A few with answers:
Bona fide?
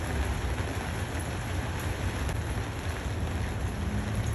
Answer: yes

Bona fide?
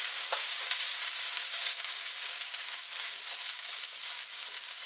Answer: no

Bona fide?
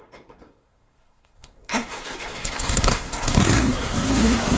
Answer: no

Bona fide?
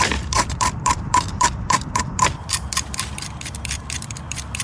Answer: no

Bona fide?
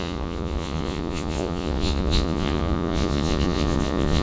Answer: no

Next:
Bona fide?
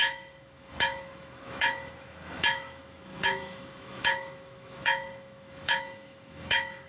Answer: no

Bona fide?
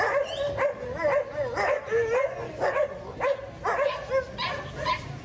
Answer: yes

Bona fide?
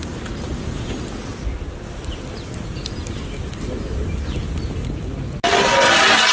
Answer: yes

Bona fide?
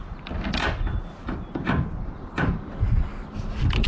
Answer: yes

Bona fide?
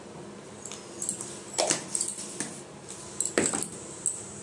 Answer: yes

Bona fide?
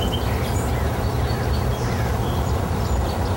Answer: yes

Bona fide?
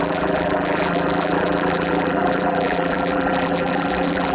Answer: no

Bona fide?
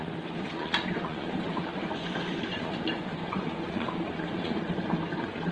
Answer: no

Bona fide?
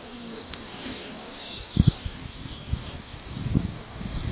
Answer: no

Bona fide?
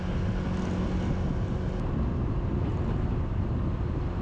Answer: yes